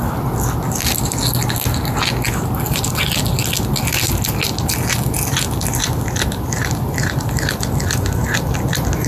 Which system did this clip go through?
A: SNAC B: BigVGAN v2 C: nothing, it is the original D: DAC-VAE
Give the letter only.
C